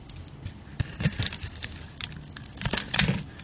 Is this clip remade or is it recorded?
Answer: recorded